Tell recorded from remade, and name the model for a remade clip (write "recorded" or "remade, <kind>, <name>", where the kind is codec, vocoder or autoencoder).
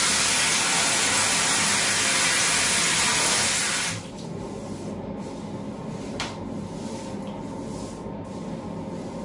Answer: recorded